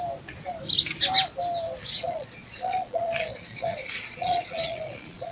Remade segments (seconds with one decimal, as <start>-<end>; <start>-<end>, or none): 1.8-5.3